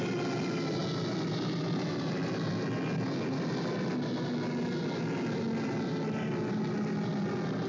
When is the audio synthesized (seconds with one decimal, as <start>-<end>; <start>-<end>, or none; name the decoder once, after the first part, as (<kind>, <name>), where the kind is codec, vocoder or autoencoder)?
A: none